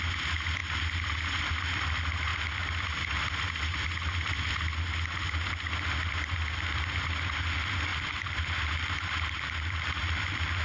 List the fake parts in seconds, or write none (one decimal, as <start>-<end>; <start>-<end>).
7.9-10.6